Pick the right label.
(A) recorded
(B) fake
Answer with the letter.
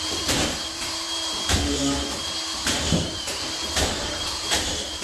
B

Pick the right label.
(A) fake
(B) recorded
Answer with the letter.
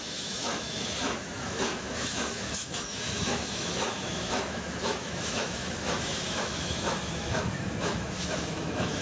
A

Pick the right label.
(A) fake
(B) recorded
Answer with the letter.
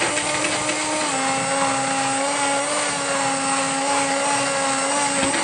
B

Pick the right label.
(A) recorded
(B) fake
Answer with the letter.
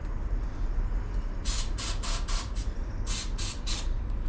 A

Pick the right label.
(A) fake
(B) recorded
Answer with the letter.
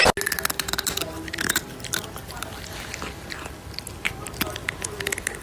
B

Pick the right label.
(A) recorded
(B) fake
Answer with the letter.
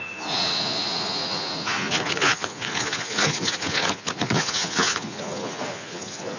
B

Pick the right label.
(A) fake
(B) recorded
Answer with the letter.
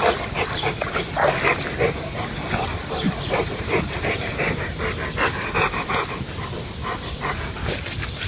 B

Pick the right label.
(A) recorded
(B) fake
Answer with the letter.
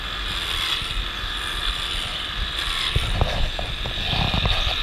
A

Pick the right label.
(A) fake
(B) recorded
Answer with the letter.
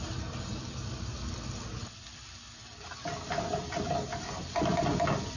B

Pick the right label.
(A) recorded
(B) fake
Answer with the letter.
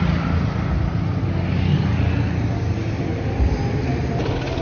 A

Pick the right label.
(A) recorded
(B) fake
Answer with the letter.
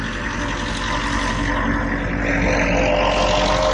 A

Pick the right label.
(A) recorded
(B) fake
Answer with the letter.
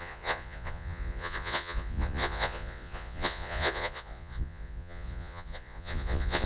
B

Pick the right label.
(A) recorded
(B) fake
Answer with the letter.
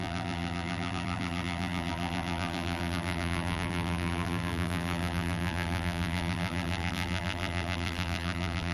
B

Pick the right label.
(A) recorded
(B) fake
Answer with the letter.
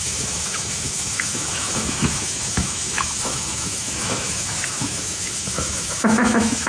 B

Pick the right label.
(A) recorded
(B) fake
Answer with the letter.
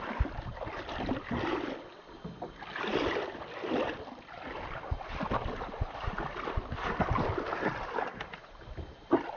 A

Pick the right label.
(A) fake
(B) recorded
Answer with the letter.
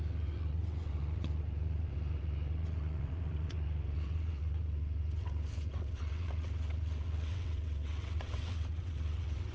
A